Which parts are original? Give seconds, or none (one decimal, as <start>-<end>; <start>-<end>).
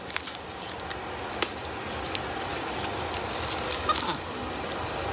0.0-1.6